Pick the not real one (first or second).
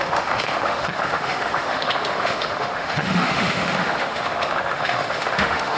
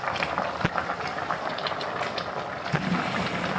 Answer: first